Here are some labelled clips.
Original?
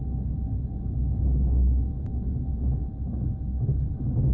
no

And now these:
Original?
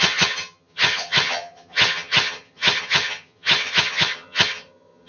no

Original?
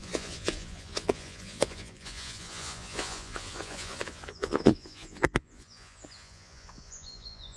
no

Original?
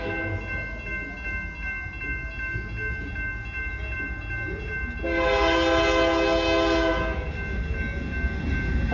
yes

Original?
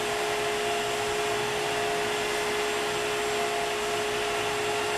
yes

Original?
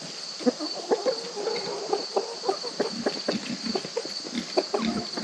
yes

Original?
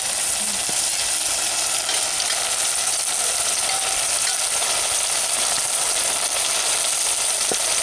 yes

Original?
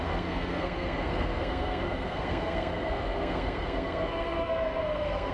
no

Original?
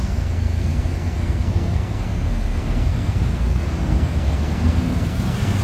no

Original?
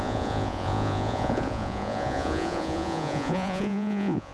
no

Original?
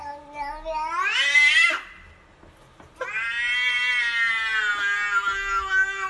yes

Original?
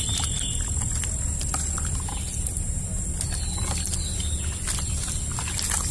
yes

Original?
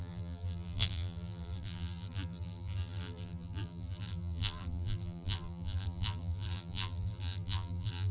no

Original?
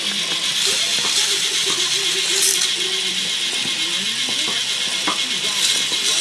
yes